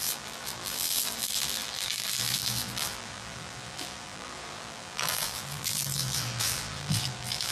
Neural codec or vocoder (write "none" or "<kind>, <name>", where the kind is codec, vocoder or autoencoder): vocoder, BigVGAN v2